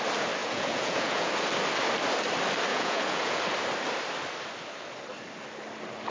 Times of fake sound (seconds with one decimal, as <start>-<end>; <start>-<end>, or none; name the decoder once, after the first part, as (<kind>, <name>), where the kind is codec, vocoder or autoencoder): 0.4-1.3 (vocoder, Vocos); 2.7-3.4